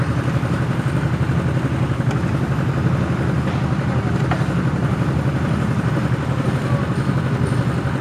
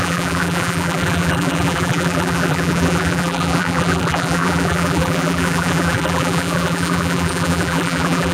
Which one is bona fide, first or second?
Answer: first